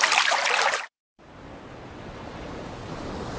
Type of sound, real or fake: real